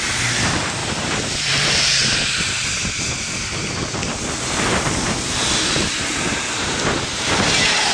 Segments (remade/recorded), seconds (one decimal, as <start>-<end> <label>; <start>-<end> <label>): 0.0-7.9 recorded